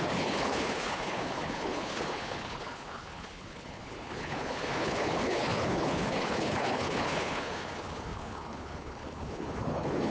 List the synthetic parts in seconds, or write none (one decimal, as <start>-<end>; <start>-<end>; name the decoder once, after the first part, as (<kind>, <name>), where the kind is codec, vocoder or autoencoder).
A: 0.0-10.1 (codec, HILCodec)